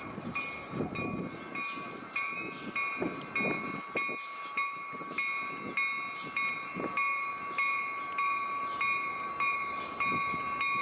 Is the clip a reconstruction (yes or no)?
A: no